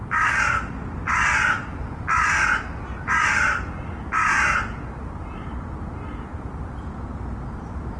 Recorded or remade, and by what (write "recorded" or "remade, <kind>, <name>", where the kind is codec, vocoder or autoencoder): recorded